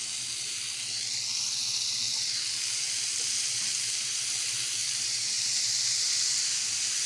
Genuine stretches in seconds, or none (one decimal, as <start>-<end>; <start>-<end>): 0.0-4.8; 5.7-7.1